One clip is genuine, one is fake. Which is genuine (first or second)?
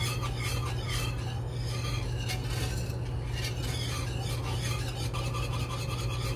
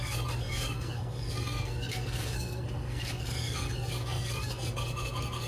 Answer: first